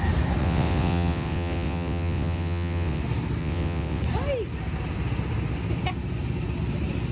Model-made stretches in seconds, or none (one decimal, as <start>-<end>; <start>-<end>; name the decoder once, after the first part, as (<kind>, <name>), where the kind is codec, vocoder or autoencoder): 0.4-3.0 (vocoder, WaveNeXt); 3.4-4.0